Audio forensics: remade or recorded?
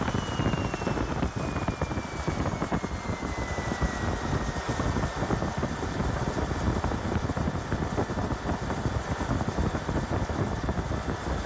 recorded